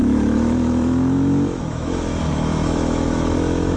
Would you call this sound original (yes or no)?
no